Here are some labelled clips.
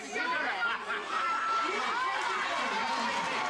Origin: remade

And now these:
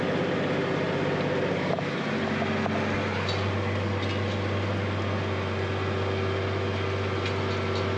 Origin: recorded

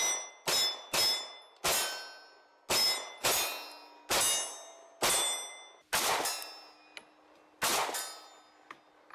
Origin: recorded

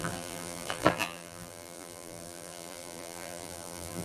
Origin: remade